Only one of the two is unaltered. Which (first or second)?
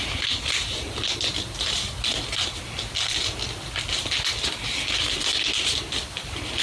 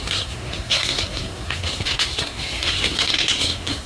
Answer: first